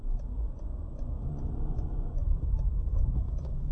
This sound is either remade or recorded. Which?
remade